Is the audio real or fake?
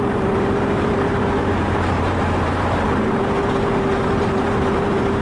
fake